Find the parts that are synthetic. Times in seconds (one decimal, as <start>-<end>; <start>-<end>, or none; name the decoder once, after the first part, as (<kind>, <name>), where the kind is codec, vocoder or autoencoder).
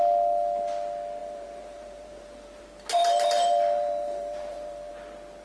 1.2-2.6 (vocoder, BigVGAN v2); 3.0-4.9